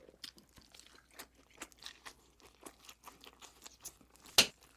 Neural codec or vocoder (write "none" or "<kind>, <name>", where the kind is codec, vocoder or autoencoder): none